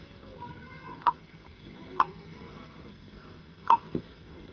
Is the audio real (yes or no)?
no